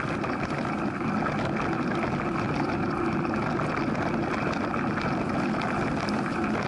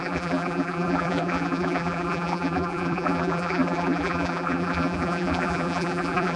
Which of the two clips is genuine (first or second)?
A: first